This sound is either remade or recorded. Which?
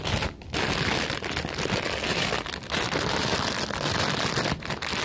recorded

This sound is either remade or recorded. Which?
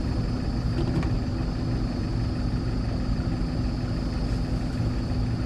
recorded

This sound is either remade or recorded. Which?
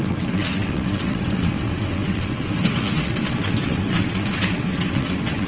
remade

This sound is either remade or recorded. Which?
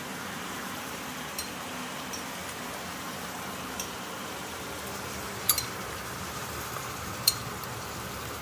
remade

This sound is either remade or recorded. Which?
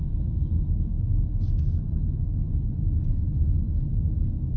recorded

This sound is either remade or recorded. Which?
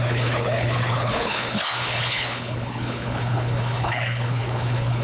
remade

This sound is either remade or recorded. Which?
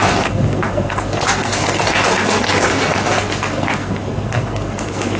remade